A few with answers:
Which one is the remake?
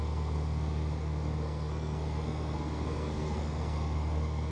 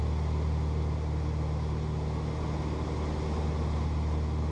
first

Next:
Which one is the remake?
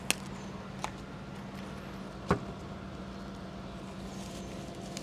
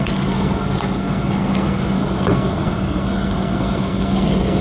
second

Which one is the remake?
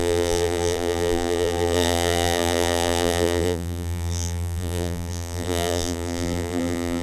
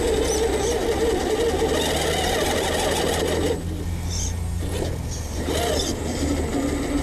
first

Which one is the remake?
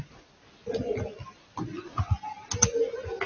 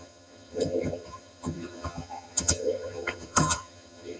second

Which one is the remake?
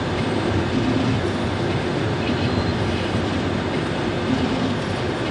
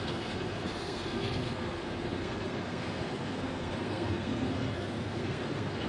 second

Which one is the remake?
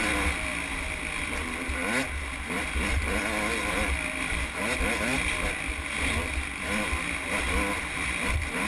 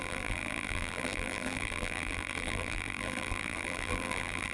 second